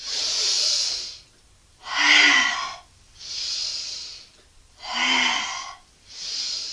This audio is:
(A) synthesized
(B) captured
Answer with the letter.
B